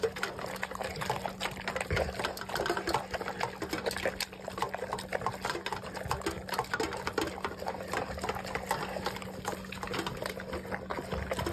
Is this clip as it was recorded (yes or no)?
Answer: yes